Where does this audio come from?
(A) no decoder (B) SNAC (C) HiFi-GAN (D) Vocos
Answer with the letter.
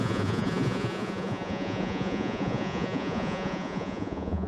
D